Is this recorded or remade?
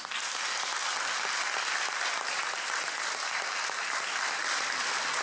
recorded